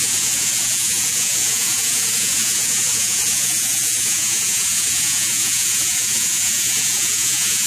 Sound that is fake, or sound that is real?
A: fake